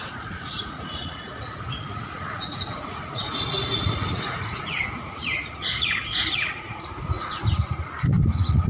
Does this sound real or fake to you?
fake